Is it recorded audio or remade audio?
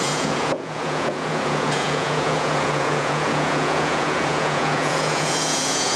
remade